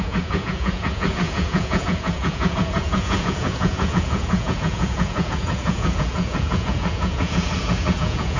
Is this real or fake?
fake